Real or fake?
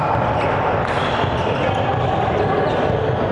real